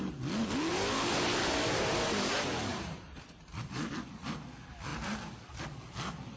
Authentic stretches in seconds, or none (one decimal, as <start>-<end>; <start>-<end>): 0.0-0.7; 2.3-2.7; 3.2-6.4

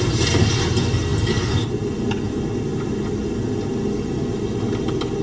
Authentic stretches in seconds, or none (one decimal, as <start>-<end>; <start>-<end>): 0.0-5.2

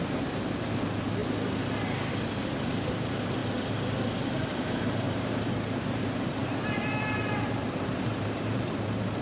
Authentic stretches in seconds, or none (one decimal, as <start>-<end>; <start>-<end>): 1.2-2.1; 3.4-4.2